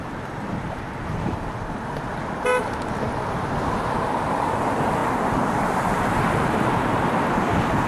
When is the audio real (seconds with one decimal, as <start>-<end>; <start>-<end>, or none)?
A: 5.0-6.3